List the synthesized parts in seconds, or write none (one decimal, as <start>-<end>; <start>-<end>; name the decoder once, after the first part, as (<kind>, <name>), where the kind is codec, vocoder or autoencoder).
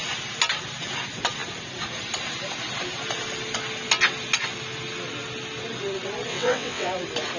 6.3-6.9 (vocoder, WaveNeXt)